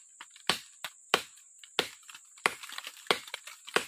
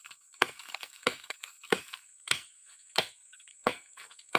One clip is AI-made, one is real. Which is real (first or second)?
first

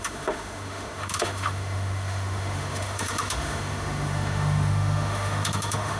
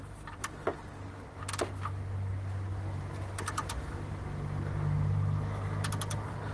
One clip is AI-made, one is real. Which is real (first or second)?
second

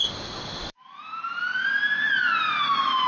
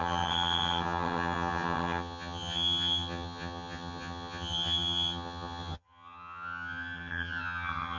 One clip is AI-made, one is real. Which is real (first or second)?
first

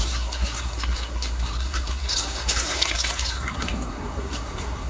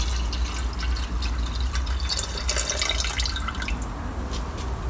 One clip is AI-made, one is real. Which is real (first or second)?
second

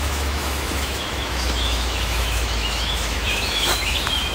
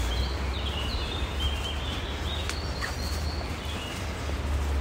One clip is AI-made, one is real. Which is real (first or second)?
second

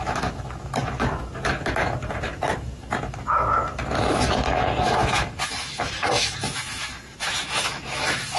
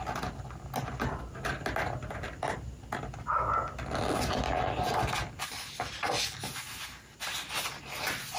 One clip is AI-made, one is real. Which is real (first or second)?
second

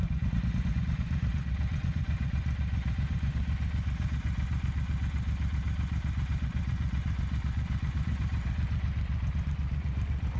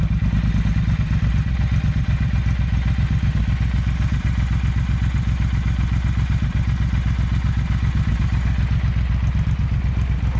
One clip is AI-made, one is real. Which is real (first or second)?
second